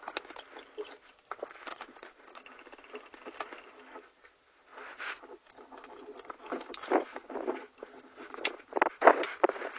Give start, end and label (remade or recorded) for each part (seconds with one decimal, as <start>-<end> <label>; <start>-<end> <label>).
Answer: 0.0-1.7 recorded; 1.7-2.4 remade; 2.4-9.8 recorded